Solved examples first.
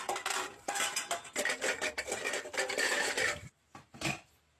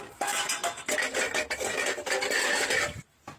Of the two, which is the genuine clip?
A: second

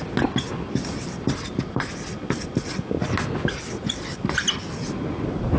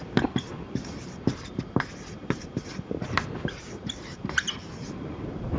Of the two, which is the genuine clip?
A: first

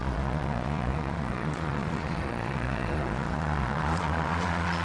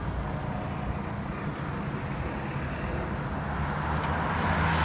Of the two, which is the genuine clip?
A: second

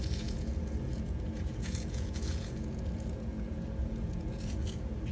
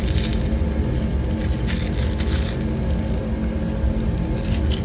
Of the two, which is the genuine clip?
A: second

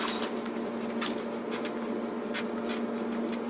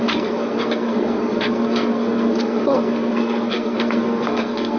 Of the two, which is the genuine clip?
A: first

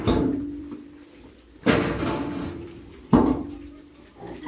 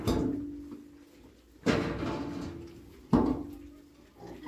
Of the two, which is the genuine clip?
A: second